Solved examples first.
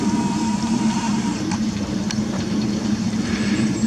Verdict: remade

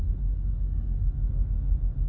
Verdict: remade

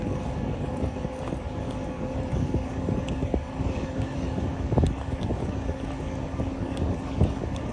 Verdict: remade